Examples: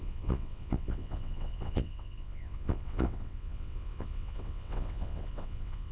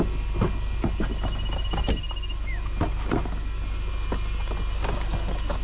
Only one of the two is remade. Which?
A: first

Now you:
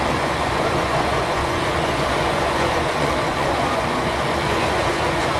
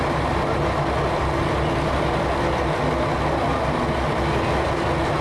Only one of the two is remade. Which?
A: first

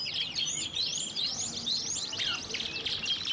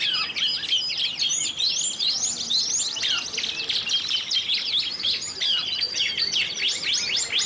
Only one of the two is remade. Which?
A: first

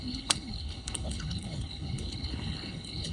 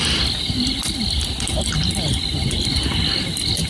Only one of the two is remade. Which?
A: first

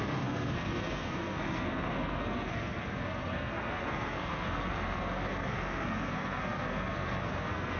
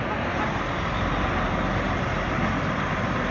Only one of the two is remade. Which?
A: first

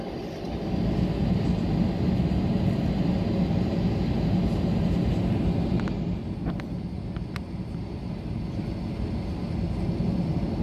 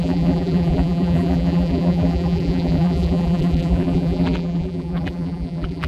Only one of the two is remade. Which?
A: second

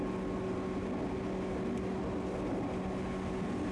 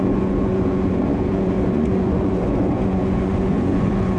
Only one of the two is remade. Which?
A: second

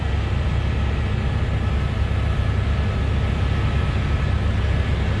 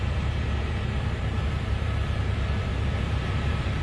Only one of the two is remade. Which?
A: second